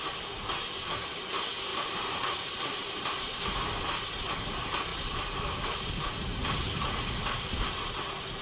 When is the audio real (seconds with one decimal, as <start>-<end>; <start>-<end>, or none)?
0.0-1.7; 3.7-4.9; 7.7-8.4